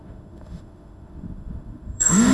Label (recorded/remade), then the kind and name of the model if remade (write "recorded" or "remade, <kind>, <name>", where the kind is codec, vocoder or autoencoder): remade, autoencoder, DAC-VAE